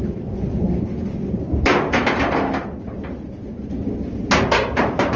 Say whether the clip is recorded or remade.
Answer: recorded